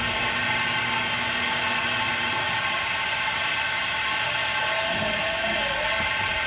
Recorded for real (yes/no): yes